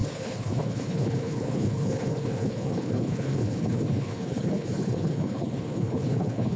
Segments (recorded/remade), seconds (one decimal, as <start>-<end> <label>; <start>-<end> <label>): 0.0-6.6 remade